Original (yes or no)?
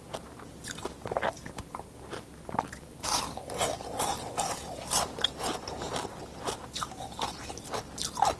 yes